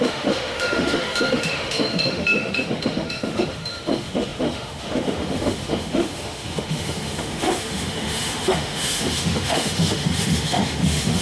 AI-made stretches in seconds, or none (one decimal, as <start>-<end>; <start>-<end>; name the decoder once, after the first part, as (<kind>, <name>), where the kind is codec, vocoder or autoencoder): 0.0-11.2 (autoencoder, DAC-VAE)